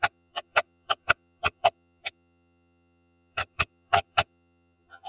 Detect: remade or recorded remade